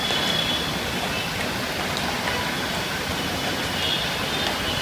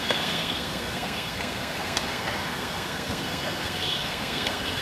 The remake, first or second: second